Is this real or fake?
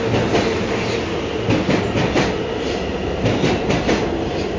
real